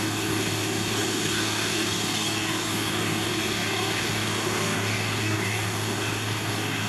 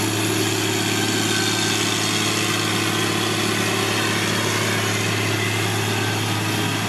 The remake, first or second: first